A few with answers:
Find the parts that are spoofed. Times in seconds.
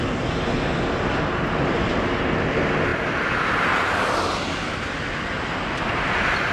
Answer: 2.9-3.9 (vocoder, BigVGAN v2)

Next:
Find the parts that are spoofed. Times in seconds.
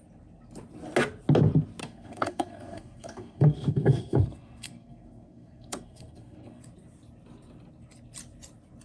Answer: 1.8-6.6 (codec, SNAC)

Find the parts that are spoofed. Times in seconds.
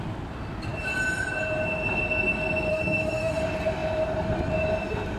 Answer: 2.7-3.4 (autoencoder, DAC-VAE)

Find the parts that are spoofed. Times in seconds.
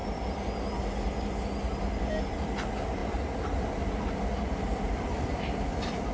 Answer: 2.1-3.0 (vocoder, BigVGAN v2); 3.8-6.1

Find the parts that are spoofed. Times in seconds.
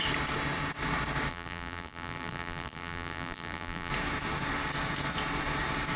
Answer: 1.3-3.9 (vocoder, BigVGAN v2)